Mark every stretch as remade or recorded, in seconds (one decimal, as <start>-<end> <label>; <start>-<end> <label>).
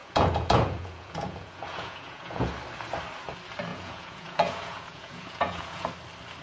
0.0-2.5 remade; 2.5-3.7 recorded; 3.7-5.9 remade; 5.9-6.4 recorded